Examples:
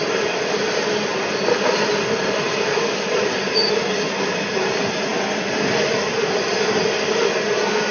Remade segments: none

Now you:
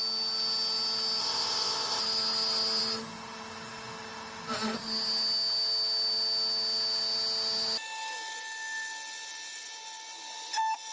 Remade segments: 1.2-2.0 (codec, ZipCodec)

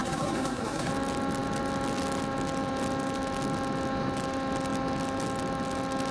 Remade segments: 0.0-0.9 (codec, SNAC)